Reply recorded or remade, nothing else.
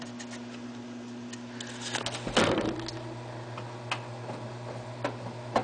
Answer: recorded